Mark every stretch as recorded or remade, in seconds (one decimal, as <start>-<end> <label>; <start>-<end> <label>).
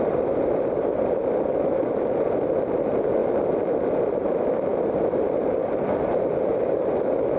0.0-1.2 remade; 1.2-1.9 recorded; 1.9-3.2 remade; 3.2-3.9 recorded; 3.9-4.7 remade; 4.7-6.8 recorded; 6.8-7.4 remade